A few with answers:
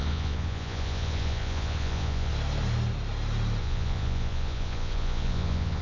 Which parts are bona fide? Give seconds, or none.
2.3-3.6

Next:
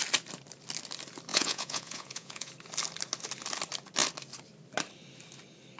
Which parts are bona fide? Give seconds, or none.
0.0-1.3; 2.5-5.8

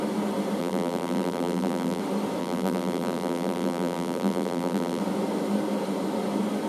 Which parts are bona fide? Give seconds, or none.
0.0-0.6; 2.0-2.4; 5.0-6.7

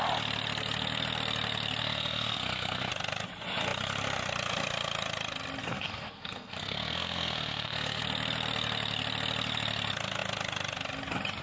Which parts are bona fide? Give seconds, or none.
0.0-1.8; 2.9-5.6; 8.0-11.4

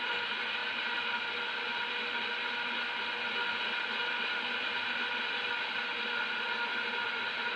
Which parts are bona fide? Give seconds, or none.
0.0-7.6

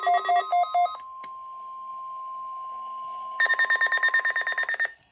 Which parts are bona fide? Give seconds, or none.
0.0-5.1

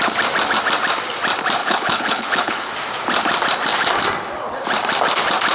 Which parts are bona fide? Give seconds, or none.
0.0-1.6; 2.7-5.5